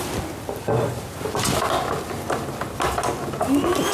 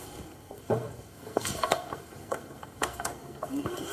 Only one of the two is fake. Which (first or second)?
second